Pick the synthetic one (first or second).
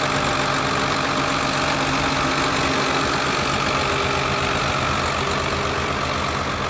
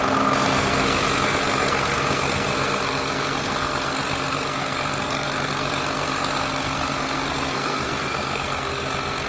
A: second